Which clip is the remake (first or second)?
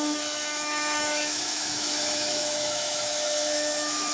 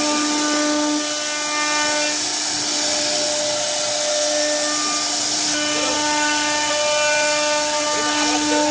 first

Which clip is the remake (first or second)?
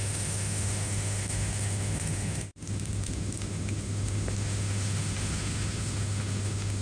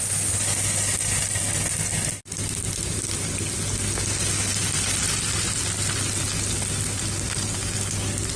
first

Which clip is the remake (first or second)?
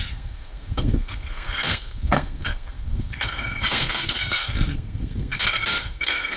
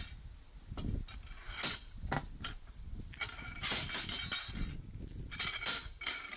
first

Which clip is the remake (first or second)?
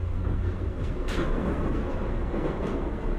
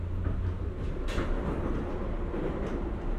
first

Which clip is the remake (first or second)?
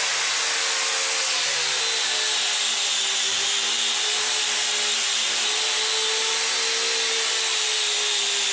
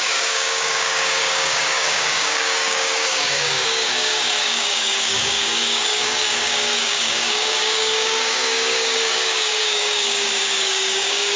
second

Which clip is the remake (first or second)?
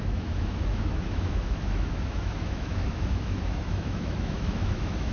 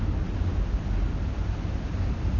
first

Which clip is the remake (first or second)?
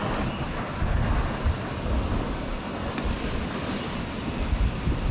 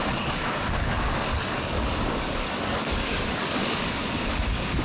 second